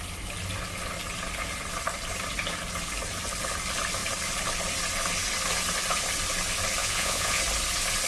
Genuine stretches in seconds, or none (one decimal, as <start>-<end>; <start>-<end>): 0.0-6.8; 7.4-8.1